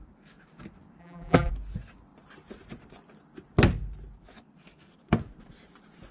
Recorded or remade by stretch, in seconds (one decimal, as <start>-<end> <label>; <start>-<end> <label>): 0.0-1.0 recorded; 1.0-1.5 remade; 1.5-6.1 recorded